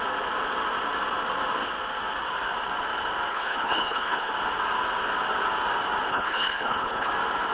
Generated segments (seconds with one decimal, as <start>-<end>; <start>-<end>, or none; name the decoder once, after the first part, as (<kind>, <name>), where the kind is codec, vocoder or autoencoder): 3.3-4.3 (codec, HILCodec); 6.1-7.1